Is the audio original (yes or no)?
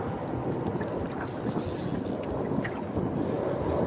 yes